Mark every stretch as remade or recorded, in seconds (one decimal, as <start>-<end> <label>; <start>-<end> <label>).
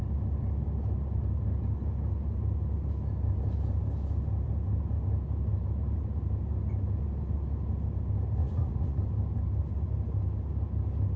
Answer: 0.0-8.4 recorded; 8.4-9.0 remade; 9.0-11.2 recorded